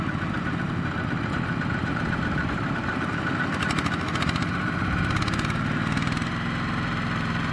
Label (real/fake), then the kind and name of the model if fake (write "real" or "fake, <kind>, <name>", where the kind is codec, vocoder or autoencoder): fake, vocoder, BigVGAN v2